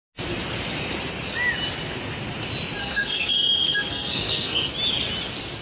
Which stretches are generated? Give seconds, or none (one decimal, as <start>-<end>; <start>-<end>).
2.8-4.7